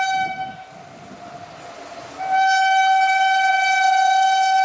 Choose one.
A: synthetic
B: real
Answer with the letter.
B